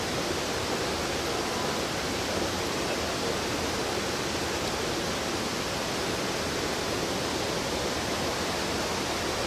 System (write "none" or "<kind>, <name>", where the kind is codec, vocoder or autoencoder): vocoder, BigVGAN v2